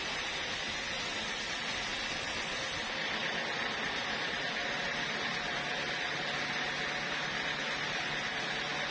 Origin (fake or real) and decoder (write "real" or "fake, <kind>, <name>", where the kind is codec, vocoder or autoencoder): real